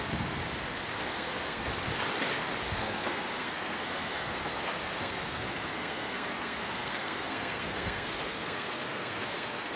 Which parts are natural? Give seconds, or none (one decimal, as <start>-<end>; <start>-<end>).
0.4-1.0; 1.7-2.7